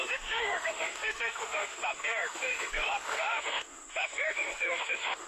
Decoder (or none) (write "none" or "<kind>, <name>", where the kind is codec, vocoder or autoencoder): autoencoder, DAC-VAE